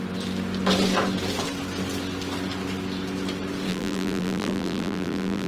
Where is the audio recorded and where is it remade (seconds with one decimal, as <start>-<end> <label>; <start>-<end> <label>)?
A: 0.0-3.7 recorded; 3.7-5.5 remade